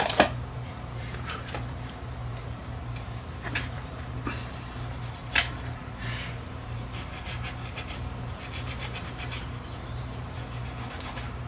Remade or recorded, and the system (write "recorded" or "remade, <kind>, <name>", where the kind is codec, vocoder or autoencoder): remade, vocoder, BigVGAN v2